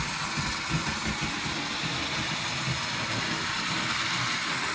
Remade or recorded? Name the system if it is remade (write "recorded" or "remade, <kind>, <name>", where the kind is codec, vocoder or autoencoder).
recorded